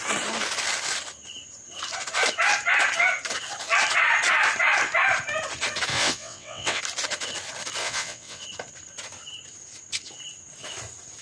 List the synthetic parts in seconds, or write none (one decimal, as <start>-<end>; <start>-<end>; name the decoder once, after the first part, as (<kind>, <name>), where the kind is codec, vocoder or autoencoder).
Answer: 5.9-6.8 (vocoder, WaveNeXt); 7.8-8.4